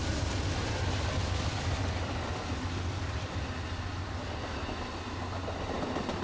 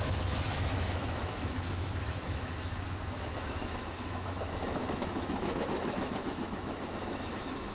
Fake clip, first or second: second